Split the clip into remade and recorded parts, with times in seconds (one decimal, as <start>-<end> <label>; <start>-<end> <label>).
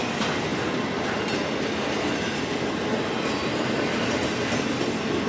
0.0-5.3 recorded